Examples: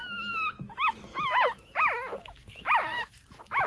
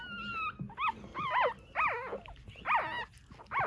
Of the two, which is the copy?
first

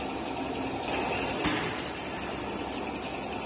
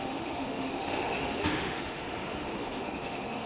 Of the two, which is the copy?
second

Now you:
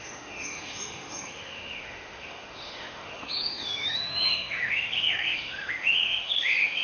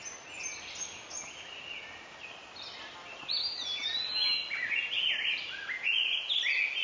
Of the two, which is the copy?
first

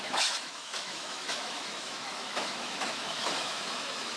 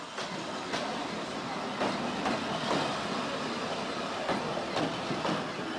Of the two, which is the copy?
first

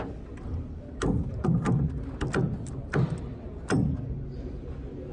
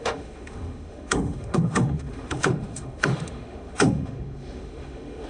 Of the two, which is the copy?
second